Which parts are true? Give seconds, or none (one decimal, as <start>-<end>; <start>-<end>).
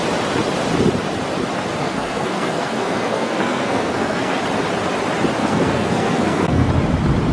0.0-1.8; 4.4-5.4; 6.7-7.3